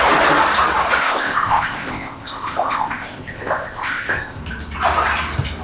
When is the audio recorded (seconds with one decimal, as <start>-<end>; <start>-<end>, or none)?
0.0-1.0; 4.4-5.6